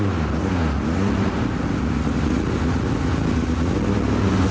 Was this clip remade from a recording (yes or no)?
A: no